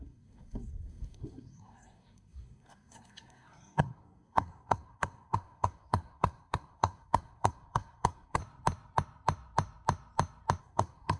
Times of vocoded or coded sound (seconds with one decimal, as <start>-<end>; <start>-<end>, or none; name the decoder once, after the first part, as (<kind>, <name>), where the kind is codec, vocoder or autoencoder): 0.0-8.4 (codec, SNAC); 10.6-11.2